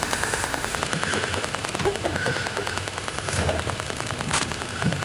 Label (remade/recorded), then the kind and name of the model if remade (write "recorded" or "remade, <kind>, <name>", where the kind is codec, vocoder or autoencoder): remade, autoencoder, DAC-VAE